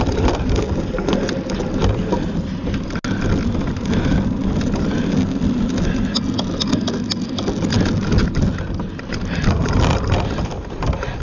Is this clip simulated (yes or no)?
no